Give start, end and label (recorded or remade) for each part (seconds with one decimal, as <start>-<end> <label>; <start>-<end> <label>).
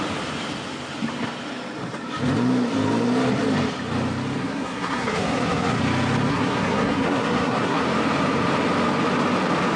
0.0-4.4 recorded; 4.4-5.8 remade; 5.8-6.3 recorded; 6.3-7.8 remade; 7.8-9.8 recorded